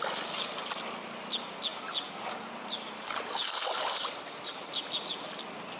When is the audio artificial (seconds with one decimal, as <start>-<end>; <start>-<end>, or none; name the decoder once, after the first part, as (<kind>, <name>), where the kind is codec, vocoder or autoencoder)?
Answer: none

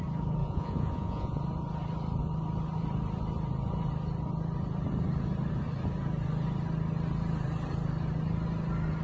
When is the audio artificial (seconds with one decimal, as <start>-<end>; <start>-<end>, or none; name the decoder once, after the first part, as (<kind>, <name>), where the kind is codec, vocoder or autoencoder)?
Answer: 0.4-1.4 (vocoder, Vocos)

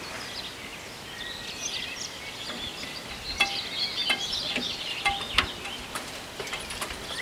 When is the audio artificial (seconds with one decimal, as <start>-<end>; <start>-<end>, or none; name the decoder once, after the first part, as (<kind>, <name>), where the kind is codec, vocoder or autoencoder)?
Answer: none

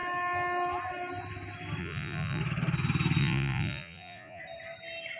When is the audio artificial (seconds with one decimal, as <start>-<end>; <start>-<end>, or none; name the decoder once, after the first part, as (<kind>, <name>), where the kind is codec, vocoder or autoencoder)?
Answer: 1.8-2.4 (vocoder, Vocos); 3.2-4.4

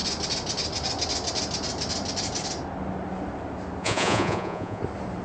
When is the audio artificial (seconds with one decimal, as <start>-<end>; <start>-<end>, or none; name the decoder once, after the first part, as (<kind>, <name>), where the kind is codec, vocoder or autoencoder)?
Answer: 3.8-4.8 (vocoder, Vocos)

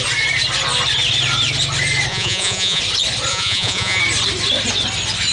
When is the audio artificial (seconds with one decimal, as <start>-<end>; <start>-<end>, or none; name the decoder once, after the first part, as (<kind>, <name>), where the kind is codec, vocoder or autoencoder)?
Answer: 2.1-2.8 (vocoder, Vocos); 3.3-4.0